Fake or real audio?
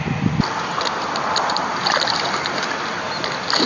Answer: real